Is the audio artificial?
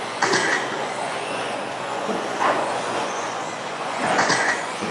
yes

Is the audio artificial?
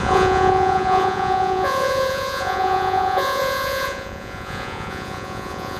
yes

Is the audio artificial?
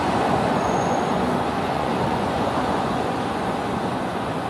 yes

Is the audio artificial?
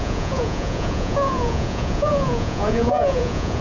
yes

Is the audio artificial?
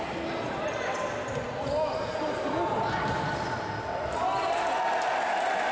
no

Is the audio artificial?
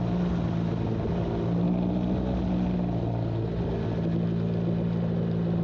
no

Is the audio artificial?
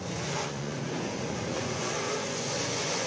yes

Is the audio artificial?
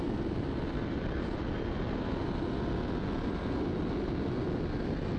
no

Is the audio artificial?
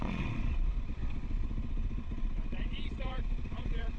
yes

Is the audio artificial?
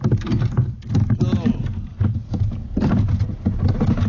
no